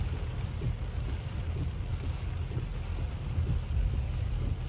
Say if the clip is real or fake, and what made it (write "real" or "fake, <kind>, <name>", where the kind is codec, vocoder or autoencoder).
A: real